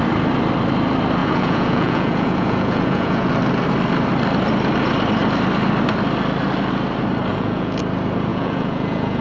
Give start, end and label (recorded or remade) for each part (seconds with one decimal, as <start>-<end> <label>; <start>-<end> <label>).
0.0-1.2 recorded; 1.2-3.3 remade; 3.3-7.3 recorded; 7.3-7.8 remade; 7.8-8.3 recorded; 8.3-9.2 remade